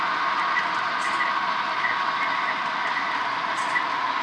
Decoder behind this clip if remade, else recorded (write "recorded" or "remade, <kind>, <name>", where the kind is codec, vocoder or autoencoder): recorded